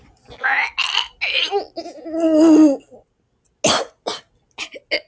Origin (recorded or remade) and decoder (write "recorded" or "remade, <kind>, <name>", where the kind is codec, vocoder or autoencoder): recorded